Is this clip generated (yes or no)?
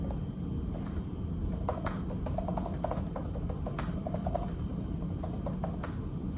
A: no